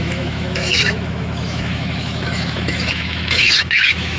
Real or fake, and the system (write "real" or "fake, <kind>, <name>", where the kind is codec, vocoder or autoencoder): fake, autoencoder, DAC-VAE